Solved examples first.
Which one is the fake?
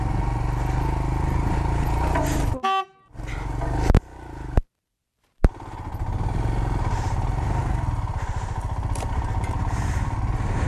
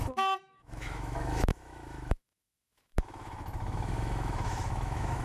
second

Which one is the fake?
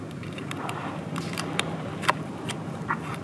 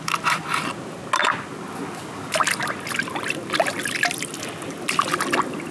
first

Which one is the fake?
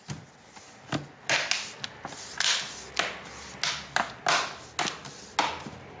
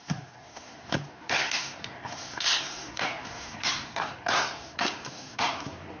second